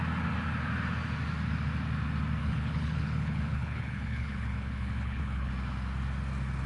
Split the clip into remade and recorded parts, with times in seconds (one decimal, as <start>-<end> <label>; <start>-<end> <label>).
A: 0.0-2.4 recorded; 2.4-5.5 remade; 5.5-6.7 recorded